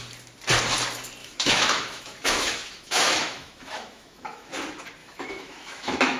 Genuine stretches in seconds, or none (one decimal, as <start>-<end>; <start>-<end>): 0.0-1.2; 4.5-5.0